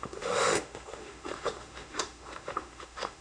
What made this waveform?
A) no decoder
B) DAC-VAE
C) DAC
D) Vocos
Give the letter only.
B